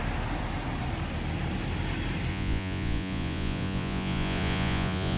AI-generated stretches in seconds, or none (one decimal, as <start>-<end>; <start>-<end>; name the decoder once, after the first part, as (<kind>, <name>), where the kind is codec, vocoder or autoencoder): 2.3-5.2 (vocoder, Vocos)